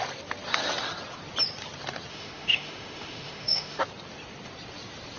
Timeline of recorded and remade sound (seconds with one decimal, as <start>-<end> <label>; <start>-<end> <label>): 0.0-2.1 recorded; 2.1-3.8 remade; 3.8-5.2 recorded